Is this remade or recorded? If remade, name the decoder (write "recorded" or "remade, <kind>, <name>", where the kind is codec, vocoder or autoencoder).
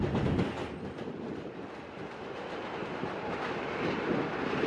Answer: recorded